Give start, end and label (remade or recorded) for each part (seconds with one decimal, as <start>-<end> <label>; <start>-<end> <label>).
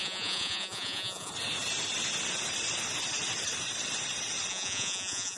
0.0-1.3 remade; 1.3-4.5 recorded; 4.5-5.4 remade